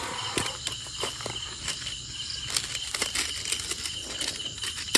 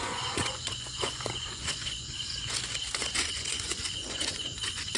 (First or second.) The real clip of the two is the first